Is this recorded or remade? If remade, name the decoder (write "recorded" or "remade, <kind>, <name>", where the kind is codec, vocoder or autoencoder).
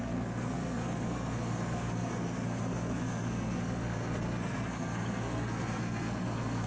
remade, codec, SNAC